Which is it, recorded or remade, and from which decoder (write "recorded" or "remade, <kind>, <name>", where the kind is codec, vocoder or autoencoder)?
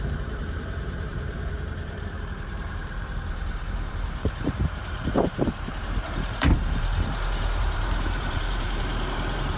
remade, vocoder, BigVGAN v2